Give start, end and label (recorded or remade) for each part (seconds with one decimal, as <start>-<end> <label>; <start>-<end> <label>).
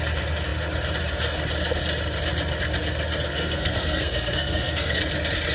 0.0-3.3 recorded; 3.3-5.0 remade; 5.0-5.5 recorded